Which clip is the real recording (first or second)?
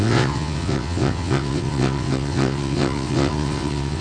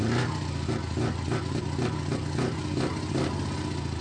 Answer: second